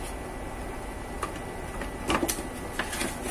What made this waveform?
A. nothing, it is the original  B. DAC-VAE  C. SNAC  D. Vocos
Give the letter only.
A